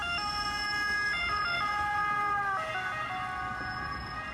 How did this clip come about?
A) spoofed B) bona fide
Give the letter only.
B